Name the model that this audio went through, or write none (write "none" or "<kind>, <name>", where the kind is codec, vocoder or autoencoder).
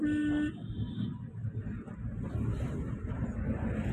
none